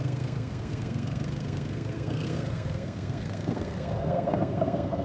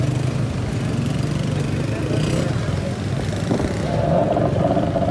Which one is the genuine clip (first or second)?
second